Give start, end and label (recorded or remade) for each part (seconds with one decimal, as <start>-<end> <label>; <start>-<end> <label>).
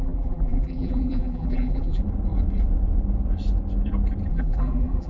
0.0-2.0 remade; 2.0-4.3 recorded; 4.3-5.1 remade